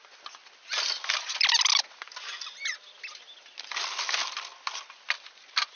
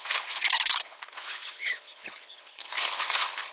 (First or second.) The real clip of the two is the first